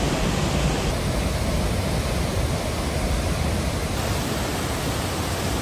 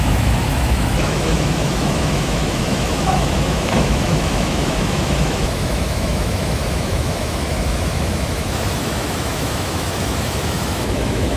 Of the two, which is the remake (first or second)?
second